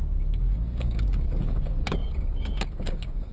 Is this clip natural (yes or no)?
no